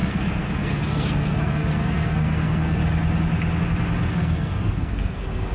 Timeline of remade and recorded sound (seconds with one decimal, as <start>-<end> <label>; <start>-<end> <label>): 0.0-2.8 remade; 2.8-4.1 recorded; 4.1-5.5 remade